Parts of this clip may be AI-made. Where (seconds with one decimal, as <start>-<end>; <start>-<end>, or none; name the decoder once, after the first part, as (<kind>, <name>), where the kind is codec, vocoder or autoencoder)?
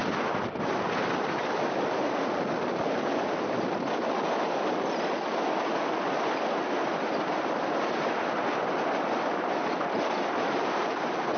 none